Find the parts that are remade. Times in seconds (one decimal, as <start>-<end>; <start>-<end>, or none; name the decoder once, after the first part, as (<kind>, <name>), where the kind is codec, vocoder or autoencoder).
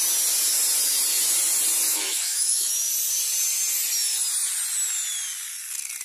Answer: 1.9-2.9 (autoencoder, DAC-VAE)